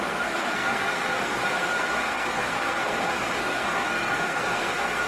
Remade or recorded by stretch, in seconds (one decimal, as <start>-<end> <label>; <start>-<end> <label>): 0.0-5.1 remade